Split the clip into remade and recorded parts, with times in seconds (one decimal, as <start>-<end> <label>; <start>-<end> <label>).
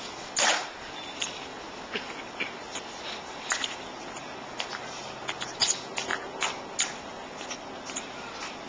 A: 0.0-8.7 recorded